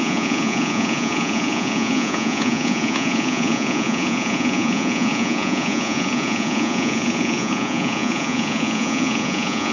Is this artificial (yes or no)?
yes